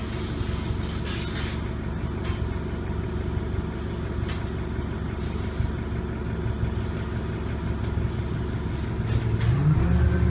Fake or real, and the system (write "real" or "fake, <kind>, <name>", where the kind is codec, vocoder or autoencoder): real